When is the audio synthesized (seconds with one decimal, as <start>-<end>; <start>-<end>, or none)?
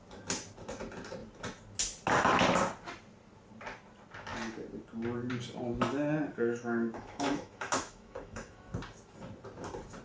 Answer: 6.3-8.7